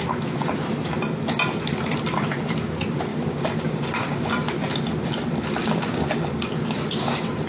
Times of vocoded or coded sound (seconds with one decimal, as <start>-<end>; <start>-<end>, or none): 3.1-4.3; 5.6-6.5